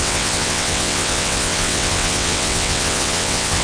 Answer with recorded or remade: remade